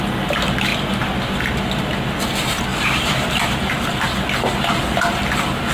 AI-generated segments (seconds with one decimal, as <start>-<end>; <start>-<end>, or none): none